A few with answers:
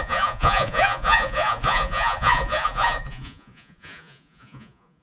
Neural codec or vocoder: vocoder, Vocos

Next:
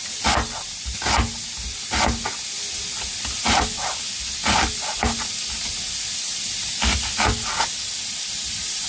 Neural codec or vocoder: none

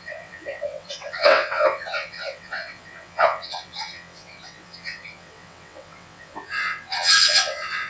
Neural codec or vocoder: vocoder, WaveNeXt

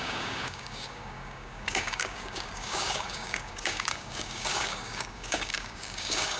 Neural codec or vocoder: codec, DAC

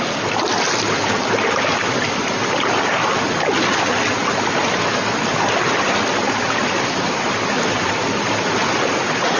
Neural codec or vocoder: none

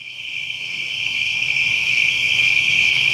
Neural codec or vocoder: codec, SNAC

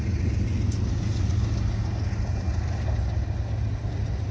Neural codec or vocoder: none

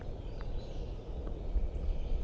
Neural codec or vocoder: vocoder, Vocos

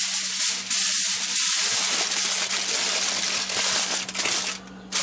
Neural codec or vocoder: none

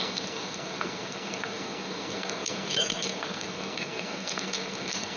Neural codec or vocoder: codec, SNAC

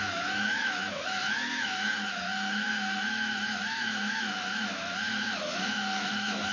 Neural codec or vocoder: autoencoder, DAC-VAE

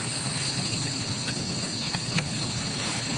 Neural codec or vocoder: codec, HILCodec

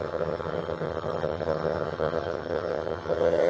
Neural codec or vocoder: vocoder, HiFi-GAN